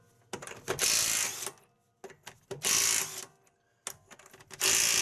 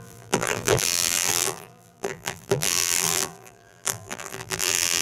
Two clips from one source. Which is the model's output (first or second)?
second